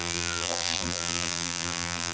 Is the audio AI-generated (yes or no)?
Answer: yes